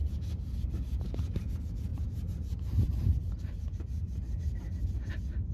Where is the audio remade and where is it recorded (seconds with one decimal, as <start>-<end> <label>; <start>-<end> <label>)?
0.0-1.5 remade; 1.5-1.9 recorded; 1.9-5.1 remade; 5.1-5.5 recorded